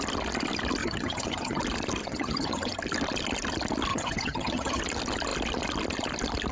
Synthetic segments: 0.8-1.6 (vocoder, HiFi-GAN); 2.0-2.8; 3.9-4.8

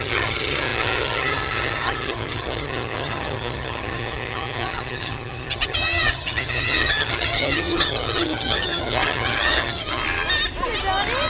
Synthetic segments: 0.0-10.0 (vocoder, HiFi-GAN)